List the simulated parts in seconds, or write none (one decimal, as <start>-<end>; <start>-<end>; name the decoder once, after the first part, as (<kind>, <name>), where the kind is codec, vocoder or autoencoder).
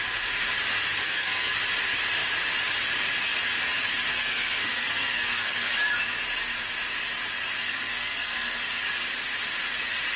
1.0-1.6 (codec, SNAC); 4.1-5.7; 7.6-8.6